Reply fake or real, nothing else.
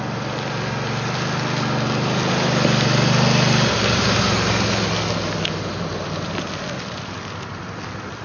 real